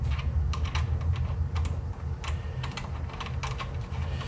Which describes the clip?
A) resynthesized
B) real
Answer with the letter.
B